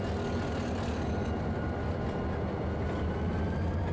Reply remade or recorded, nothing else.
recorded